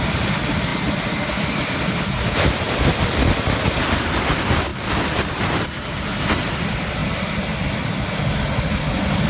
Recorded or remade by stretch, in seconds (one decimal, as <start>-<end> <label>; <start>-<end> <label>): 0.0-9.3 recorded